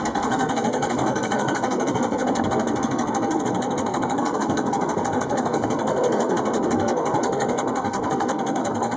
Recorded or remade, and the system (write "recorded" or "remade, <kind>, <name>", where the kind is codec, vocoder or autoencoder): remade, codec, SNAC